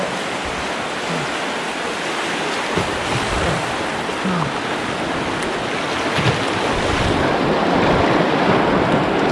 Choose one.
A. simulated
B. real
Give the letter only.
B